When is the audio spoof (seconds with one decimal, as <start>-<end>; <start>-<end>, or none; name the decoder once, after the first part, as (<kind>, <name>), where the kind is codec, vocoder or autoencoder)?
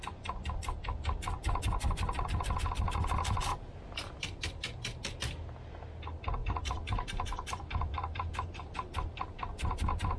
6.4-8.9 (vocoder, BigVGAN v2)